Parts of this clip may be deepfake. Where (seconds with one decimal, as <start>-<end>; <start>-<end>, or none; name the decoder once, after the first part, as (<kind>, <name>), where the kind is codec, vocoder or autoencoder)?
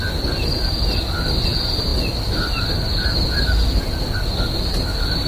none